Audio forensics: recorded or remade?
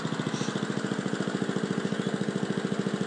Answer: recorded